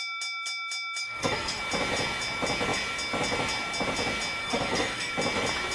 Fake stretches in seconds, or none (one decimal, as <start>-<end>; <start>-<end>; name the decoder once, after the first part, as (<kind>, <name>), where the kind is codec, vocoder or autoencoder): 1.0-1.6 (codec, SNAC); 4.4-5.1